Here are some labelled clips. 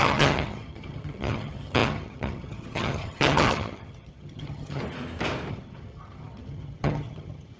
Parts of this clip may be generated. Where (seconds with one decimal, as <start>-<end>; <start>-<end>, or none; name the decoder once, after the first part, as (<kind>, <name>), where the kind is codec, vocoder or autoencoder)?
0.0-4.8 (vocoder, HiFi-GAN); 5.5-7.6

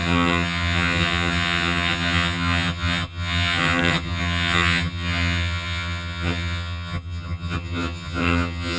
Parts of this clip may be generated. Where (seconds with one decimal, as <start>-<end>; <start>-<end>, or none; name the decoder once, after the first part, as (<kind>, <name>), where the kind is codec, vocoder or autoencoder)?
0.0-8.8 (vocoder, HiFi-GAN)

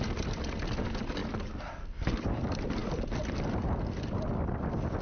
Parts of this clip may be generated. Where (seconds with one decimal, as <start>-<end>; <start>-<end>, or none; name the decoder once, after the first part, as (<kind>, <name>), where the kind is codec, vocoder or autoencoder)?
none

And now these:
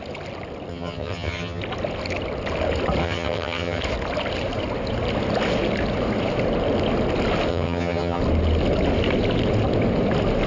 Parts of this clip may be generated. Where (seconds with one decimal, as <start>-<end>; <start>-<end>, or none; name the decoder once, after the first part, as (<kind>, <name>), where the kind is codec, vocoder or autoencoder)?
0.7-1.6 (vocoder, HiFi-GAN); 3.0-3.8; 7.5-8.2

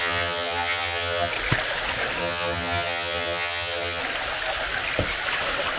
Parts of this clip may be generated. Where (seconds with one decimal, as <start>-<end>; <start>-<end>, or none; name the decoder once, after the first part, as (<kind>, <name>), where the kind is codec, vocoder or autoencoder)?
0.0-1.3 (vocoder, HiFi-GAN); 2.2-4.0

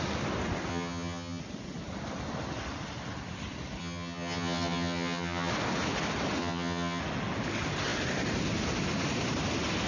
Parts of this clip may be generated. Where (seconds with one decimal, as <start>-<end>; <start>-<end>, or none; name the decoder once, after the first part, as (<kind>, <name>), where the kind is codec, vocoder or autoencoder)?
0.7-1.4 (vocoder, HiFi-GAN); 3.8-5.5; 6.4-7.0

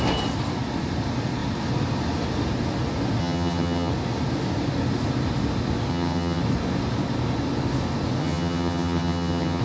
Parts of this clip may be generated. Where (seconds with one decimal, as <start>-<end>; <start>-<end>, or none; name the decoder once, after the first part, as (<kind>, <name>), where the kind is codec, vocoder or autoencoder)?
3.2-3.9 (vocoder, HiFi-GAN); 5.9-6.4; 8.2-9.6